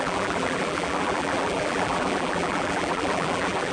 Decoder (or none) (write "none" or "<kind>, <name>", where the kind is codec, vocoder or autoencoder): vocoder, BigVGAN v2